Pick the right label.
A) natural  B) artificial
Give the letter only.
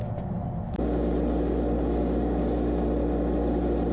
A